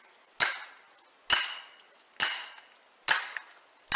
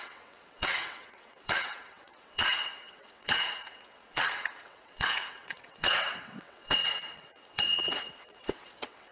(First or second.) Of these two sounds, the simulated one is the second